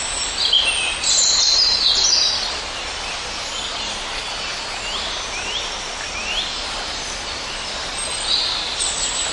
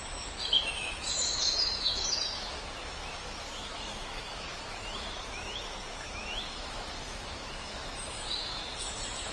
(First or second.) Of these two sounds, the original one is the first